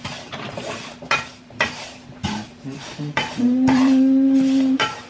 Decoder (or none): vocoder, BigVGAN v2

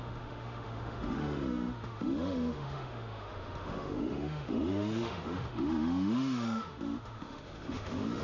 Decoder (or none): autoencoder, DAC-VAE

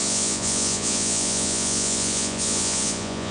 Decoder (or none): vocoder, Vocos